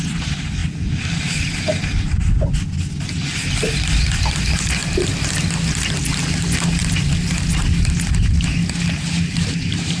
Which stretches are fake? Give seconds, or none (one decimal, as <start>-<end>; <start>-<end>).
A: none